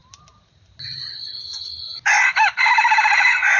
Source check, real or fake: real